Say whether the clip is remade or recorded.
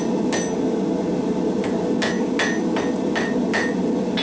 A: recorded